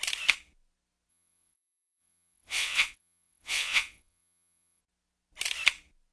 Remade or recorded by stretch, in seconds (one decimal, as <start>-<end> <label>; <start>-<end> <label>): 0.0-1.1 recorded; 1.1-4.8 remade; 4.8-6.1 recorded